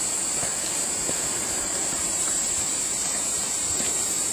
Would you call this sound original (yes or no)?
no